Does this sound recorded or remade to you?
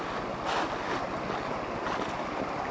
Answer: recorded